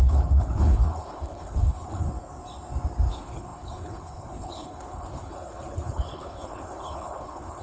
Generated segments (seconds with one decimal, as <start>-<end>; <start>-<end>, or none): 0.0-2.0; 3.1-7.6